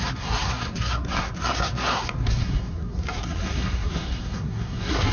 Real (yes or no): no